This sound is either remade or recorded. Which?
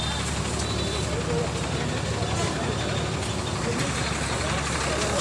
recorded